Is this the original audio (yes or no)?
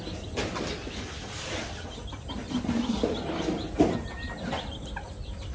yes